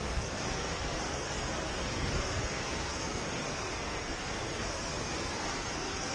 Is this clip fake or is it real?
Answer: fake